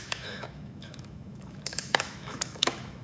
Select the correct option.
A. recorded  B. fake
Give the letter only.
B